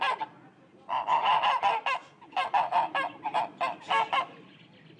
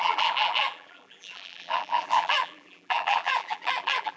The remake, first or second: second